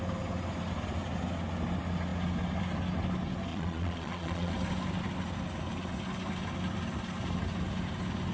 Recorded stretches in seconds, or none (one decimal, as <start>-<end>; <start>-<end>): 0.0-3.5; 4.5-8.3